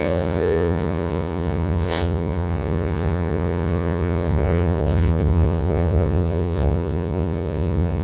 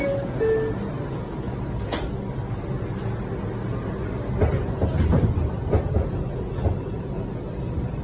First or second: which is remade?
first